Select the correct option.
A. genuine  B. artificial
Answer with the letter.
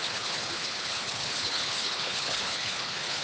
B